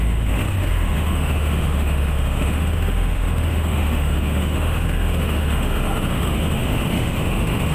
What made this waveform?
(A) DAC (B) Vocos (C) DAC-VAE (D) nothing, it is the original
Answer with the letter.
C